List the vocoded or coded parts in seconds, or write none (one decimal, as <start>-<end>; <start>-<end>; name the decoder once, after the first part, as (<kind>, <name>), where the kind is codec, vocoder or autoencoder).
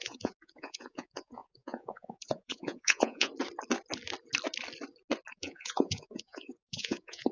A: 0.0-3.3 (vocoder, Vocos); 5.3-7.3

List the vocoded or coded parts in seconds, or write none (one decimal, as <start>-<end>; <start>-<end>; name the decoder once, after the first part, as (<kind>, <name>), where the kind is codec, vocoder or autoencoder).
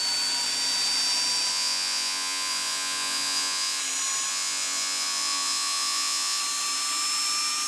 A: 1.5-3.8 (vocoder, Vocos); 4.3-6.4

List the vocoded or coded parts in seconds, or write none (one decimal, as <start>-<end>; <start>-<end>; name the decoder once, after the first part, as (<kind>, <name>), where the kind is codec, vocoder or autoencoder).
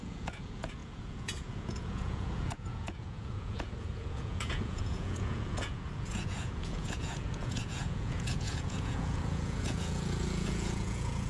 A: 0.0-11.3 (vocoder, Vocos)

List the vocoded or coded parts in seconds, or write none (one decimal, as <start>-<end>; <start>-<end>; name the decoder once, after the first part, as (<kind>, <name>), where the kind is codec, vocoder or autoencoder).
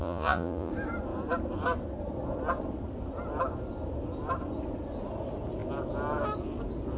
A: 0.0-0.7 (vocoder, Vocos)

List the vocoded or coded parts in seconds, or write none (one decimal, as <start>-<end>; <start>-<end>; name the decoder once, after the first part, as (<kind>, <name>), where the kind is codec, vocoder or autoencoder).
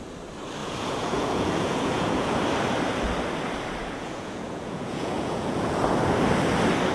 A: 0.6-2.4 (vocoder, Vocos); 3.8-5.8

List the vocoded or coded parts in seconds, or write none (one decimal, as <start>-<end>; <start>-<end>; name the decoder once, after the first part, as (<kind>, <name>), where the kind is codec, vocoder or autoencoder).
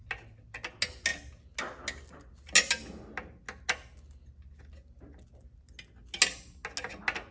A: none